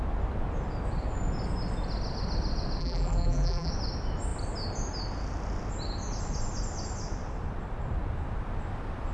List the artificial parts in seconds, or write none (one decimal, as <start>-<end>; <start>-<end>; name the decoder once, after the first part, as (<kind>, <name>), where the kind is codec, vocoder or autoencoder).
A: 2.8-3.7 (vocoder, BigVGAN v2)